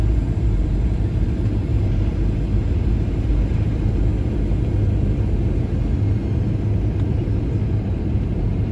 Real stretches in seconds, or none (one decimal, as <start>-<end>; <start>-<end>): 4.1-7.1